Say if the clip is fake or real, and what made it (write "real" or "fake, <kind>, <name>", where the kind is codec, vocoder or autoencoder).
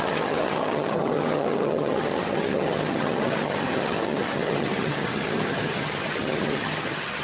fake, vocoder, HiFi-GAN